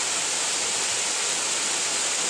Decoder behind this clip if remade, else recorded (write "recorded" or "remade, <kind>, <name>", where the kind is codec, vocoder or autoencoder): remade, vocoder, BigVGAN v2